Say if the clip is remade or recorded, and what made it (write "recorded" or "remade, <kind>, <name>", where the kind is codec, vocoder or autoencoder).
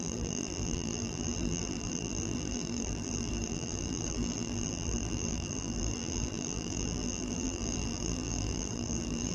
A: remade, vocoder, BigVGAN v2